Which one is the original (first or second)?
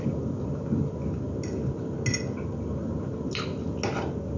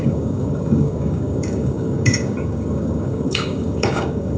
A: first